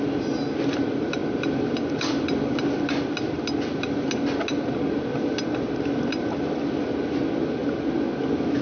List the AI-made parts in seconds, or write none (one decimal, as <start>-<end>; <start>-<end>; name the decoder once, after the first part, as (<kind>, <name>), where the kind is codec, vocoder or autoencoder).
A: none